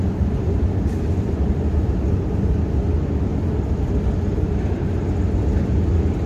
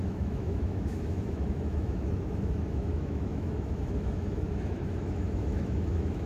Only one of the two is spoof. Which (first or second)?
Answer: second